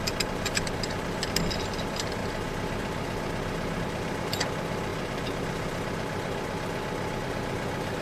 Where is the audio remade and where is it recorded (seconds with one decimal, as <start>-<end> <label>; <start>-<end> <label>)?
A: 0.0-8.0 recorded